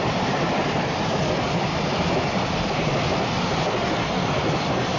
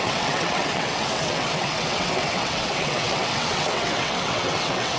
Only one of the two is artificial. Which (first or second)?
second